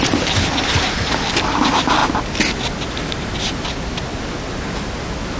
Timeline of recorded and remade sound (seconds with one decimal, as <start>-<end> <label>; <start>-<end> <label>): 0.0-5.4 recorded